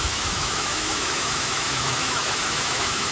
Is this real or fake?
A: fake